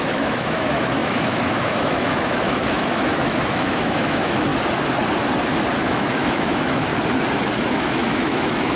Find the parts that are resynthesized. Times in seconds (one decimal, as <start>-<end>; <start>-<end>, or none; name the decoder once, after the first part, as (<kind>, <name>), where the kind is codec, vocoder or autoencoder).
0.0-4.5 (autoencoder, DAC-VAE); 5.8-6.9; 7.7-8.8